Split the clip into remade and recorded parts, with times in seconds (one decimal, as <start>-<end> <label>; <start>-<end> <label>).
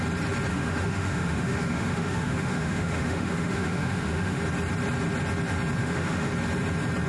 0.0-0.5 recorded; 0.5-4.4 remade; 4.4-5.8 recorded; 5.8-6.3 remade; 6.3-7.1 recorded